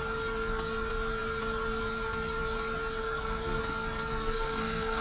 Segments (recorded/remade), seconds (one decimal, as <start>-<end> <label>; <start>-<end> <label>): 0.0-3.0 recorded; 3.0-3.6 remade; 3.6-4.1 recorded; 4.1-5.0 remade